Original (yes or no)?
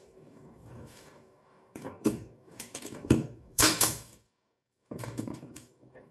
no